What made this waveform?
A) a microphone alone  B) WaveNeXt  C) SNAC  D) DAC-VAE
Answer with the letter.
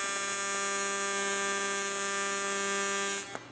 A